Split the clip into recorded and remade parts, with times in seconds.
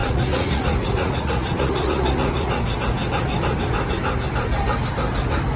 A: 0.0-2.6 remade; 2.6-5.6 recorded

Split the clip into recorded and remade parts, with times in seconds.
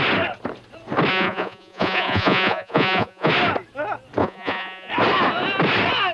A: 0.0-1.1 recorded; 1.1-3.3 remade; 3.3-4.2 recorded; 4.2-4.9 remade; 4.9-6.1 recorded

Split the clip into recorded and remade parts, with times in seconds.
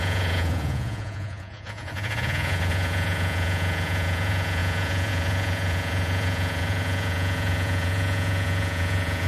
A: 0.0-9.3 remade